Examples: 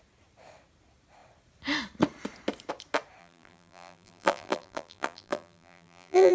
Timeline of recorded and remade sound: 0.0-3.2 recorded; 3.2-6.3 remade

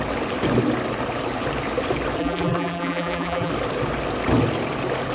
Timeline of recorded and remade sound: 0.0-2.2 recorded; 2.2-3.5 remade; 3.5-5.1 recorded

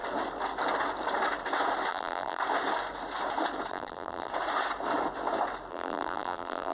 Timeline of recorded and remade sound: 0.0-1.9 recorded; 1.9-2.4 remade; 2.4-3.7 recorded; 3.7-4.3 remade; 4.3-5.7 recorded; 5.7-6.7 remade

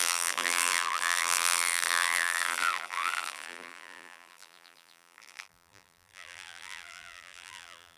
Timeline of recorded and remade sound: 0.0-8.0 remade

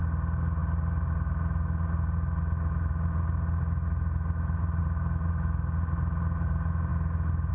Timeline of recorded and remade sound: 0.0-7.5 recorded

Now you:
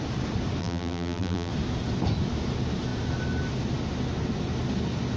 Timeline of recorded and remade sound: 0.0-0.6 recorded; 0.6-1.5 remade; 1.5-5.2 recorded

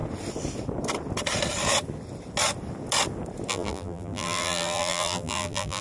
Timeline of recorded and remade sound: 0.0-3.5 recorded; 3.5-5.8 remade

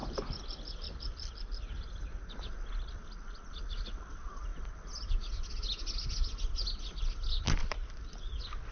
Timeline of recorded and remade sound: 0.0-2.3 remade; 2.3-8.7 recorded